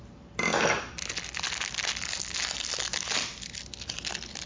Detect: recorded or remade recorded